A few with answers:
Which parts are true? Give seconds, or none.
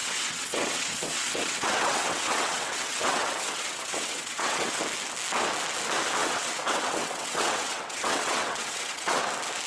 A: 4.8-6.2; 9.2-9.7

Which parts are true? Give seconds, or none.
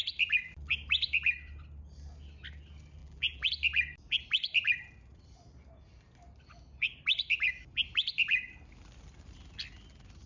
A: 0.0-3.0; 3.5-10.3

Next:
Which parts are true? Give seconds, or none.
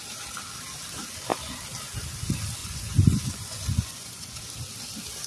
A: 0.0-2.6; 4.4-5.3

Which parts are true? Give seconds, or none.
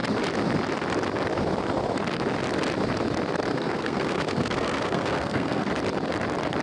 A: 0.0-3.5; 5.7-6.6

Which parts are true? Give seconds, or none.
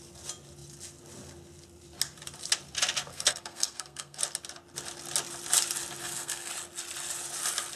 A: 0.0-3.1; 4.2-6.0; 6.5-7.8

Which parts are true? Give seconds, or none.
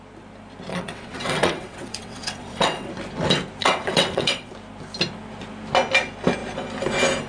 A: 0.0-0.7; 2.9-3.6; 4.5-7.3